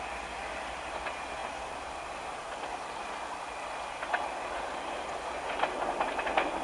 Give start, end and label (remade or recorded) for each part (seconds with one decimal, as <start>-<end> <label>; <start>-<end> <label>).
0.0-6.6 recorded

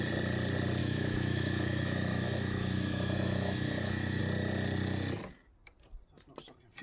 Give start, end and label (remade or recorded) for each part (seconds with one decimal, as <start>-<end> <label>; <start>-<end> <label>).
0.0-0.8 recorded; 0.8-4.2 remade; 4.2-6.8 recorded

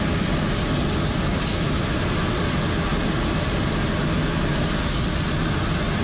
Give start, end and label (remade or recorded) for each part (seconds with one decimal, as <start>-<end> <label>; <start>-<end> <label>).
0.0-6.0 recorded